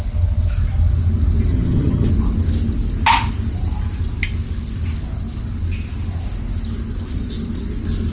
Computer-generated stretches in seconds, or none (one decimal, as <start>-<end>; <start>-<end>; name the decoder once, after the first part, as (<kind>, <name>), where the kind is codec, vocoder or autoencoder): 1.5-2.1 (vocoder, HiFi-GAN)